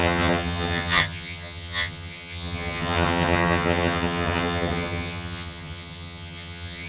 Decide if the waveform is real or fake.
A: fake